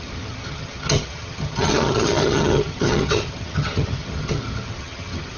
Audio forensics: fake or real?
fake